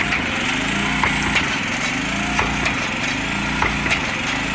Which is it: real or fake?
real